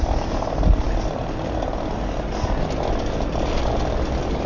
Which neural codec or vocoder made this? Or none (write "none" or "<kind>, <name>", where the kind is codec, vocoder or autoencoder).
none